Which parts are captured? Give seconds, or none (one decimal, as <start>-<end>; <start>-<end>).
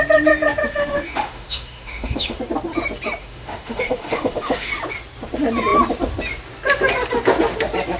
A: 0.0-0.7; 2.4-3.2; 4.7-8.0